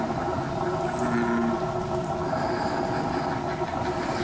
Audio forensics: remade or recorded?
recorded